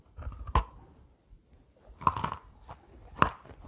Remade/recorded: recorded